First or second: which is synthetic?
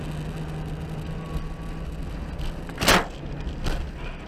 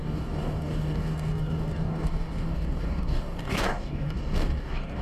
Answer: second